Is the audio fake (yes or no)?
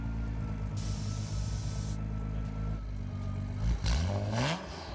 no